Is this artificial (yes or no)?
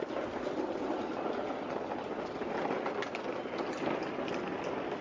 no